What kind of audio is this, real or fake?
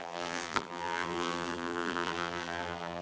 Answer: fake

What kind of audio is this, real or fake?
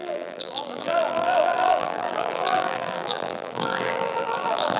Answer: fake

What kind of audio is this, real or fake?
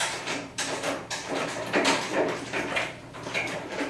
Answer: fake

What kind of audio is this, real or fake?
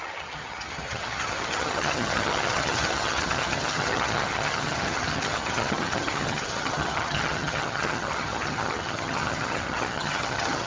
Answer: fake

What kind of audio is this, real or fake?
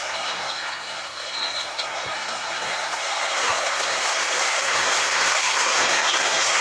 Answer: fake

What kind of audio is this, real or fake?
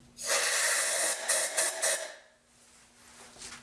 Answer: real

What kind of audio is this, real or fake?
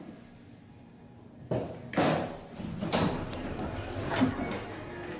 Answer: real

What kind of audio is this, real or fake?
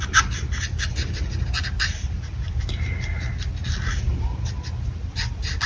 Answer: real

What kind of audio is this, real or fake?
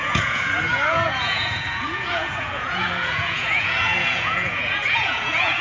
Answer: fake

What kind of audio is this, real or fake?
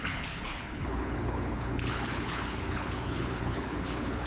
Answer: fake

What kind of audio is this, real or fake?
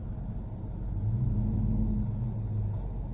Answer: real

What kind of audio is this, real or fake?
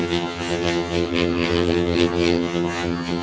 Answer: fake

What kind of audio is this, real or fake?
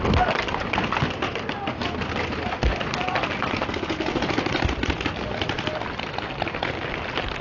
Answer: real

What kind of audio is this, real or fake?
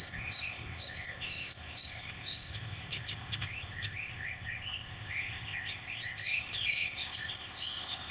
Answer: fake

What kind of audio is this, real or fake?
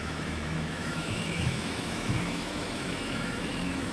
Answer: fake